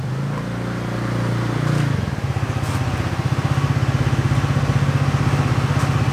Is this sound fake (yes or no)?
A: no